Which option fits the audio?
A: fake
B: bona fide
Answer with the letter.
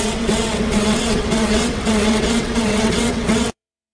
A